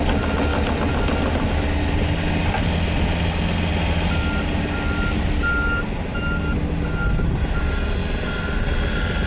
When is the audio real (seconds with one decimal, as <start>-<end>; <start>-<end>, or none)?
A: 0.0-9.3